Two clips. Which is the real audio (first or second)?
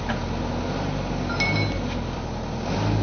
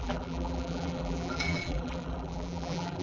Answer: first